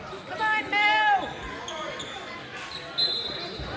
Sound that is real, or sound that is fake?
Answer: real